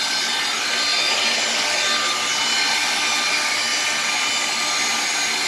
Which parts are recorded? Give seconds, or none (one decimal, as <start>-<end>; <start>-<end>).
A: 0.0-5.5

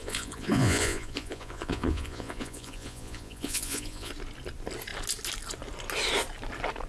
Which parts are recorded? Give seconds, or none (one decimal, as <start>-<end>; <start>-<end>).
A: 4.1-6.9

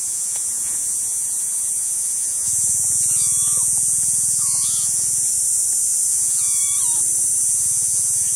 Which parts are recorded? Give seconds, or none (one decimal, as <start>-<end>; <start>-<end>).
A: 5.3-6.1; 6.6-7.4

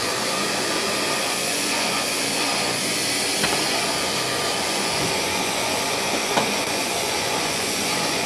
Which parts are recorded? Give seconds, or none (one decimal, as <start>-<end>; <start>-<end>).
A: 3.0-3.6

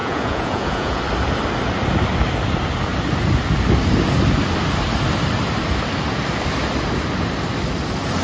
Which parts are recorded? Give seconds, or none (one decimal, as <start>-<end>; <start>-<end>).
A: 1.0-8.2